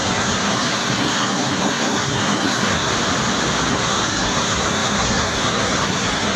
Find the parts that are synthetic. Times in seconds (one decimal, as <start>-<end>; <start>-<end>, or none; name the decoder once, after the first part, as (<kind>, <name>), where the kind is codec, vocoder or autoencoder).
0.0-2.9 (codec, SNAC); 3.7-6.4